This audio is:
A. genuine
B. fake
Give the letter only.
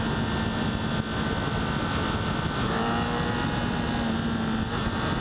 A